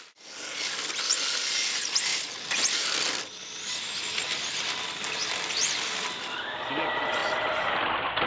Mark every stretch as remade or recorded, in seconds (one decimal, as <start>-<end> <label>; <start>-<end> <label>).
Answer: 0.0-8.3 recorded